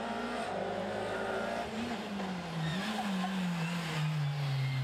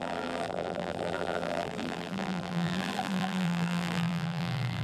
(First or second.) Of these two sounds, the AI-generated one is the second